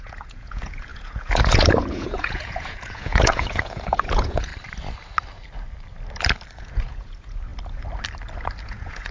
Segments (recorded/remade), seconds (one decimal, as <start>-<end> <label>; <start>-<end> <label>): 0.0-4.5 remade; 4.5-6.6 recorded; 6.6-7.5 remade; 7.5-8.6 recorded; 8.6-9.1 remade